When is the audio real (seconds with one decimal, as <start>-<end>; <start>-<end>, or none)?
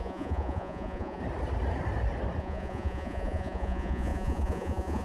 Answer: 1.2-2.4